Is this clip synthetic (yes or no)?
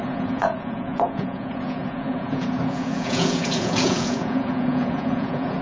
yes